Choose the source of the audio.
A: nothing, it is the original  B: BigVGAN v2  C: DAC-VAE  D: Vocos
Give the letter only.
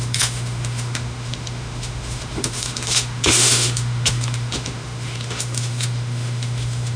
C